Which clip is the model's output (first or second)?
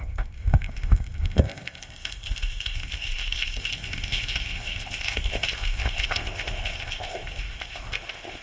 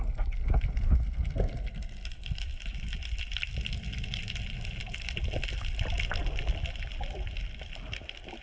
first